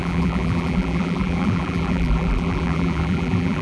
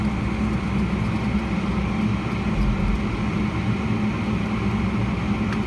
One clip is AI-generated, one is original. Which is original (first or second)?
second